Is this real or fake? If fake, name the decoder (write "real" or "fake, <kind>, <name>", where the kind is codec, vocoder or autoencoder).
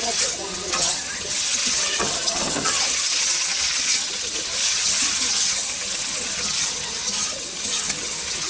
fake, vocoder, HiFi-GAN